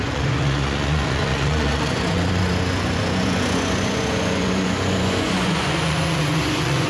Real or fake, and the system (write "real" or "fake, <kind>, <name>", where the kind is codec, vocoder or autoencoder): fake, vocoder, Vocos